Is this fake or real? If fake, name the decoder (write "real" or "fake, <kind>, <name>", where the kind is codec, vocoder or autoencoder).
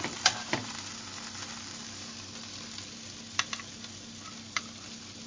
fake, vocoder, BigVGAN v2